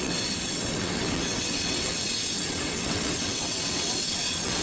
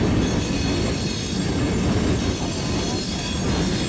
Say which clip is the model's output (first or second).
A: first